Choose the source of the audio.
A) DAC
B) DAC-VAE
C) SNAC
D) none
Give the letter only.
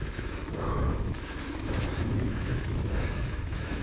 B